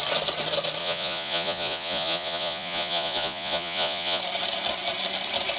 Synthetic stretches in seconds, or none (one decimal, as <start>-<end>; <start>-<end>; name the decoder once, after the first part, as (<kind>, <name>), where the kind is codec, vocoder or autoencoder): 0.8-4.2 (vocoder, Vocos)